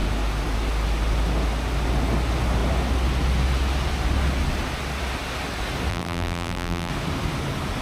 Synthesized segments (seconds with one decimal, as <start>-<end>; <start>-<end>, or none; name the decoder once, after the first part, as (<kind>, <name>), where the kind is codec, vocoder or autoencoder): 5.9-6.9 (vocoder, BigVGAN v2)